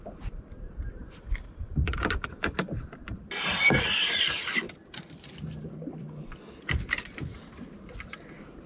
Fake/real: fake